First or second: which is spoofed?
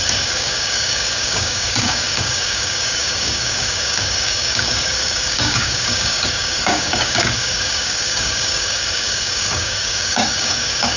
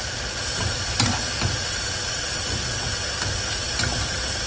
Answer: first